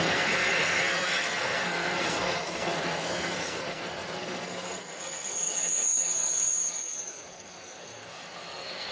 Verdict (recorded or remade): remade